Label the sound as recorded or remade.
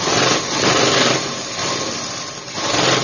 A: recorded